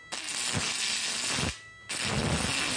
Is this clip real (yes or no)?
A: yes